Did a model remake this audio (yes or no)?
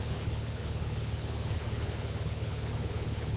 yes